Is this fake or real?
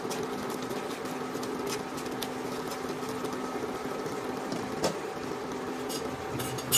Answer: real